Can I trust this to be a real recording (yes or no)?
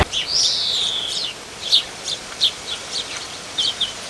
no